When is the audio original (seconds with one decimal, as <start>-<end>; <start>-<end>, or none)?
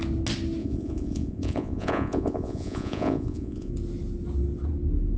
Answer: 0.0-0.6; 3.7-5.2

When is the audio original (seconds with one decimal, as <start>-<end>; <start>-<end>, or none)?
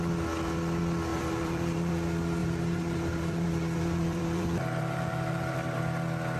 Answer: 0.0-1.1; 1.9-2.4; 5.8-6.4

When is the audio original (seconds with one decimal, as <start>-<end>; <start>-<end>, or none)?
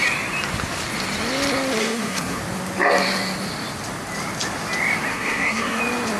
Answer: 0.0-1.8; 2.4-5.1; 5.8-6.2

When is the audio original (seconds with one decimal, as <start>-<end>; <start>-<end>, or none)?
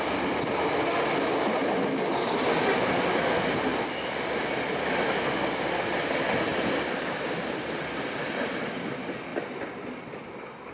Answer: 0.0-10.7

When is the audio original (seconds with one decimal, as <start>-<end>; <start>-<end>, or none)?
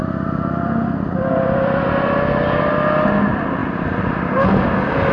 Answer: 1.9-5.1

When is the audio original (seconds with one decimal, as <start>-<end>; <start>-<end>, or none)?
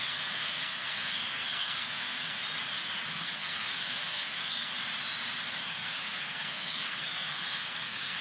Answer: 2.4-3.1; 4.7-5.5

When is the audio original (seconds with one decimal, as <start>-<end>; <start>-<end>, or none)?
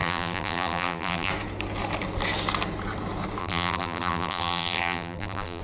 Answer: 1.3-3.4